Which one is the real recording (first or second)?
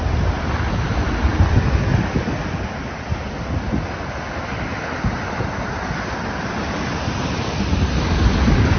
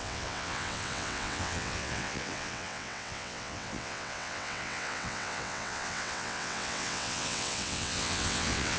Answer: first